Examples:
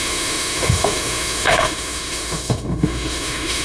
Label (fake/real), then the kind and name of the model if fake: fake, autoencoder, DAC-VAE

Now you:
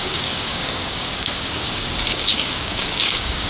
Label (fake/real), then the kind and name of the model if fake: fake, codec, DAC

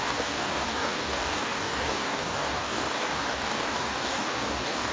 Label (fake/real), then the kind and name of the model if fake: fake, codec, DAC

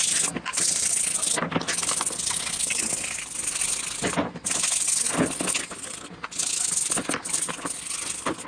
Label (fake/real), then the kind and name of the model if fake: real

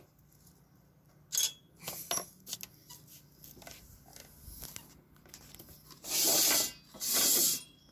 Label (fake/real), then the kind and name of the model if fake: real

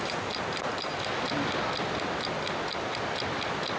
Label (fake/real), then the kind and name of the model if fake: real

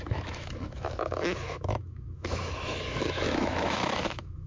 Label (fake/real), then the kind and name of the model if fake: fake, autoencoder, DAC-VAE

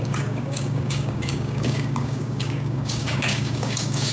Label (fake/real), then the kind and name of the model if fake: fake, codec, DAC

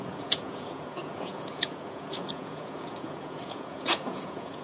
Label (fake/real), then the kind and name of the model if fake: fake, vocoder, Vocos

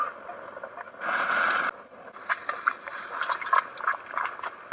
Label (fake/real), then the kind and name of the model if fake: real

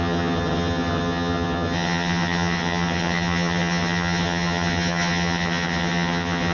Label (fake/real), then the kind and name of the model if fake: fake, vocoder, HiFi-GAN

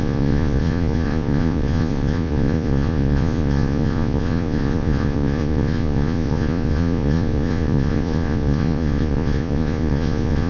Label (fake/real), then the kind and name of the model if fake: fake, vocoder, Vocos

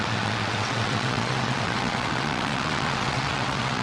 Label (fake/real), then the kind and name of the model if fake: fake, vocoder, WaveNeXt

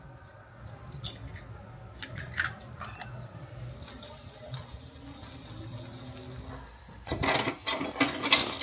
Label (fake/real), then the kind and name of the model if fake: real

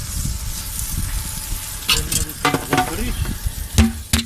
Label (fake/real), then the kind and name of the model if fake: real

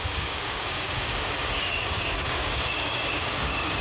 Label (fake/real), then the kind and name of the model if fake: fake, codec, DAC